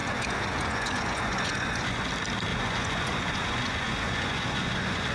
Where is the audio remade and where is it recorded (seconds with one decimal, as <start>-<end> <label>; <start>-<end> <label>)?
0.0-2.1 remade; 2.1-2.5 recorded; 2.5-5.1 remade